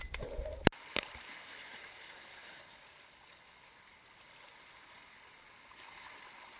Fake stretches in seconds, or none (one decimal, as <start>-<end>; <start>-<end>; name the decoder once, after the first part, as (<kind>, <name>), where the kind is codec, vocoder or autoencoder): none